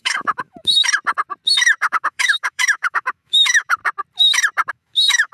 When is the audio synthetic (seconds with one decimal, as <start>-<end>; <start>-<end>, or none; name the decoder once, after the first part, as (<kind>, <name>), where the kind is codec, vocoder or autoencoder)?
0.0-0.8 (autoencoder, DAC-VAE); 1.8-3.8; 4.7-5.3